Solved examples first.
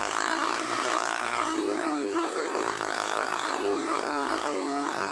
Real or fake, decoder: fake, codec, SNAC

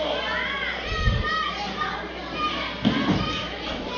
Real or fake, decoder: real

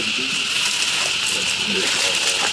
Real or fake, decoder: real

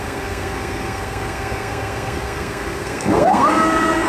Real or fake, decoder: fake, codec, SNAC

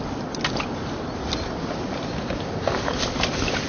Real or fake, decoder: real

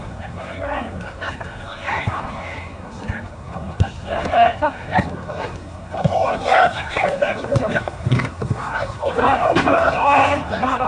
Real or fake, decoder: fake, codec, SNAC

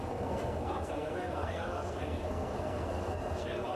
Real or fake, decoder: fake, codec, SNAC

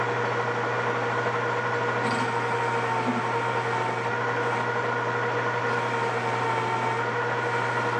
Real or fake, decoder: real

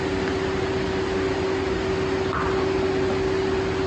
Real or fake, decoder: real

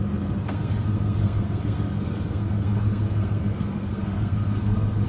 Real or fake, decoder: fake, codec, SNAC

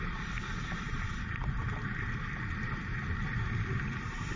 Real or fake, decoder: real